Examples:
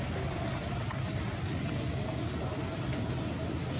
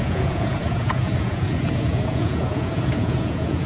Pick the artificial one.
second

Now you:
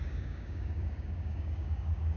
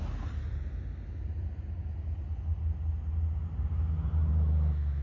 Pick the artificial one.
first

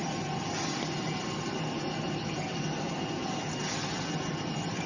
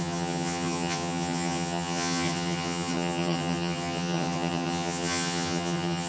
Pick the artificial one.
second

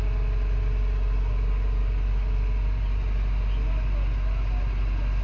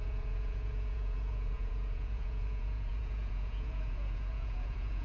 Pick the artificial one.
second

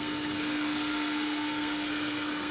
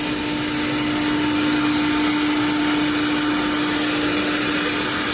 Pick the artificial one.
first